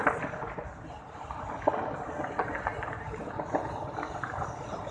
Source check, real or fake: real